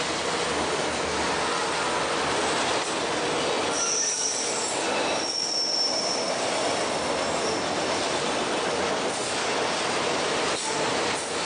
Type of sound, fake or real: real